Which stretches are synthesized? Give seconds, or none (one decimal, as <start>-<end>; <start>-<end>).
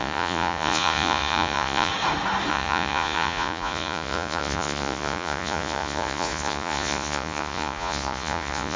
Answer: 0.0-1.9; 2.5-8.8